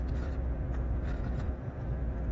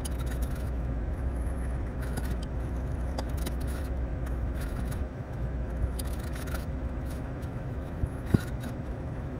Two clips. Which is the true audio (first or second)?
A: first